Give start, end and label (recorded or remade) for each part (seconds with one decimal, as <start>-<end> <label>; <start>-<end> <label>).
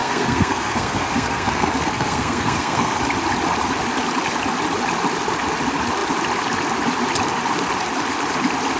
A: 0.0-3.0 remade; 3.0-8.8 recorded